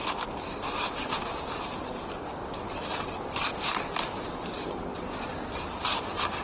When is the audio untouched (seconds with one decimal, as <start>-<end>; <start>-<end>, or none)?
0.0-6.4